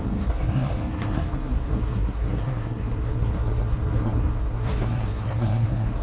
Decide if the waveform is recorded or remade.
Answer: remade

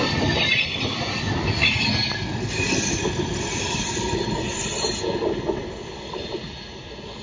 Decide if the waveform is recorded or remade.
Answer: recorded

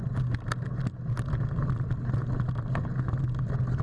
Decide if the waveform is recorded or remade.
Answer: recorded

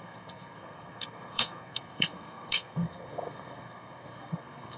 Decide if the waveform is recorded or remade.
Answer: remade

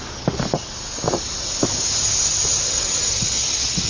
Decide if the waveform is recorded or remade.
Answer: recorded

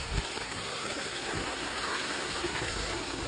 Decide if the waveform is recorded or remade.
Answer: remade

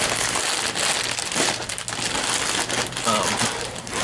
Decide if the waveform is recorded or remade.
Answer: recorded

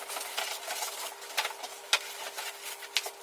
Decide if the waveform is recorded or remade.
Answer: recorded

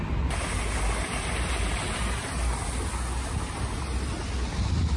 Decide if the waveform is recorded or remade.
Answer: recorded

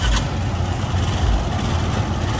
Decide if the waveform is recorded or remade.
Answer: recorded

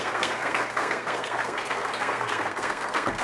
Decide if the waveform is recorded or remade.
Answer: remade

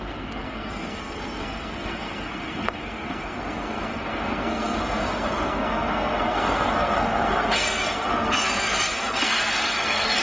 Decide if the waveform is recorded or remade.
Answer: remade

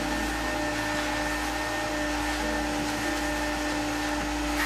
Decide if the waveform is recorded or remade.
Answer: recorded